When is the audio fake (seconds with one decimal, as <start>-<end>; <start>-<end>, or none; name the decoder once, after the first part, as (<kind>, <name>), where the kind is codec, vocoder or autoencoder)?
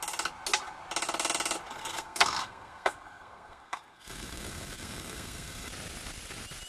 1.7-5.7 (codec, SNAC)